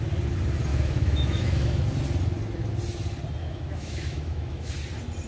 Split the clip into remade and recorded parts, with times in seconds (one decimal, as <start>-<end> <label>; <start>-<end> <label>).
0.0-0.7 recorded; 0.7-1.8 remade; 1.8-3.4 recorded; 3.4-4.7 remade; 4.7-5.3 recorded